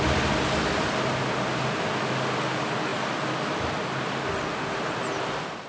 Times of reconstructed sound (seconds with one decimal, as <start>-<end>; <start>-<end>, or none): none